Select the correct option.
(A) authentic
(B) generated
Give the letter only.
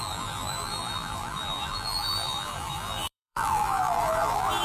B